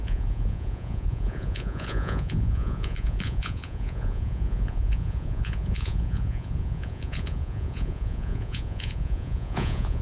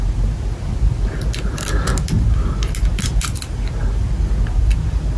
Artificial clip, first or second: first